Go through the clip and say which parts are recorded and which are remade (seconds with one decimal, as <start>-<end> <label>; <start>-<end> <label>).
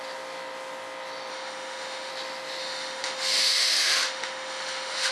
0.0-1.3 recorded; 1.3-2.1 remade; 2.1-2.6 recorded; 2.6-5.1 remade